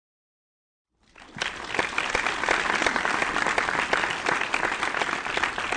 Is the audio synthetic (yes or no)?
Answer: no